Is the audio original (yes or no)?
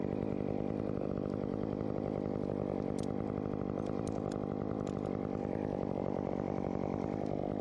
yes